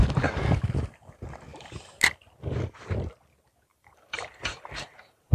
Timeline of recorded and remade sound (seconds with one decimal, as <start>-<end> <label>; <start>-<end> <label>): 0.0-3.7 recorded; 3.7-5.3 remade